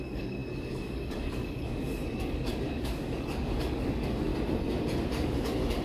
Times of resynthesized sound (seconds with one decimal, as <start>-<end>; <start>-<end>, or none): 0.0-4.3; 5.1-5.8